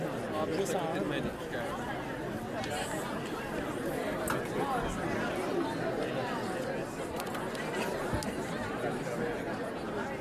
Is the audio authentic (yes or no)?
yes